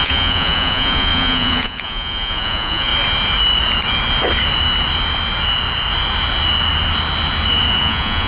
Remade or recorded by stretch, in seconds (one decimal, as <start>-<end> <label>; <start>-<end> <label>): 0.0-2.9 remade; 2.9-7.8 recorded; 7.8-8.3 remade